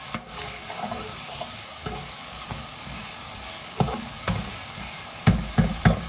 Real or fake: fake